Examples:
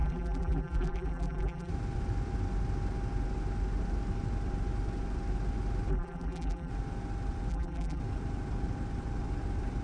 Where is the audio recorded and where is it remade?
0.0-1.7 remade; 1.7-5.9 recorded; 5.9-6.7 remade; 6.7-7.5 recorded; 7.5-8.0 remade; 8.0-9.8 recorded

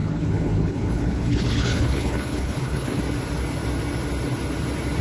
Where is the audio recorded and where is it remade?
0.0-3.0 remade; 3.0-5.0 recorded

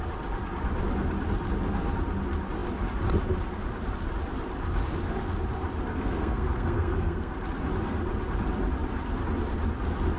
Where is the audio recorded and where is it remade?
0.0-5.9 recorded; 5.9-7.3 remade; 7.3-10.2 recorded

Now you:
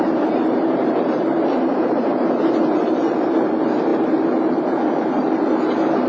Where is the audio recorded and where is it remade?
0.0-2.1 remade; 2.1-2.7 recorded; 2.7-6.1 remade

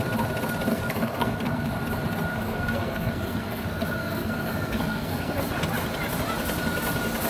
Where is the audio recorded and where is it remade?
0.0-0.7 recorded; 0.7-1.7 remade; 1.7-2.3 recorded; 2.3-5.4 remade; 5.4-7.3 recorded

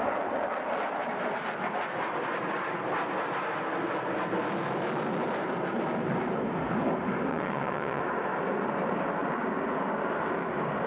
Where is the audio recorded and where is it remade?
0.0-7.3 recorded; 7.3-8.0 remade; 8.0-10.9 recorded